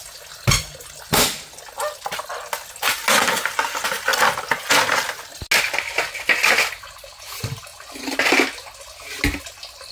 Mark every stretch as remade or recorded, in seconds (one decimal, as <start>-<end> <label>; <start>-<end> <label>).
0.0-9.9 recorded